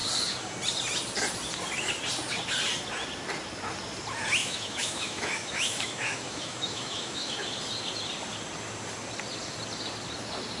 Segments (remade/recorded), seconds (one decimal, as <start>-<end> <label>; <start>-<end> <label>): 0.0-4.4 recorded; 4.4-7.6 remade; 7.6-10.6 recorded